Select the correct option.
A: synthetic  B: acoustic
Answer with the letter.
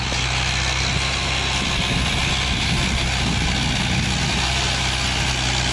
B